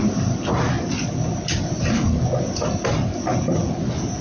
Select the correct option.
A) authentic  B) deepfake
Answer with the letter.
A